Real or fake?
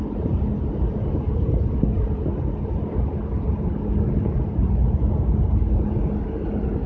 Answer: real